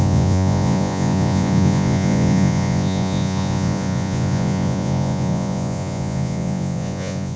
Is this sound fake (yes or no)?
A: yes